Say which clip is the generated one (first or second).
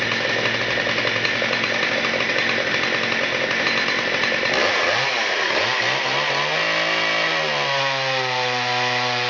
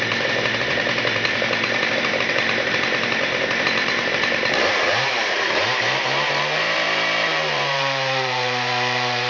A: second